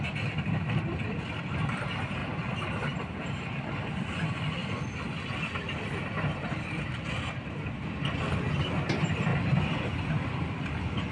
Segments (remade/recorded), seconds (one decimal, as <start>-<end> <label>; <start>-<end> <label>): 0.0-2.2 recorded; 2.2-3.3 remade; 3.3-4.6 recorded; 4.6-7.9 remade; 7.9-9.3 recorded; 9.3-10.1 remade; 10.1-11.1 recorded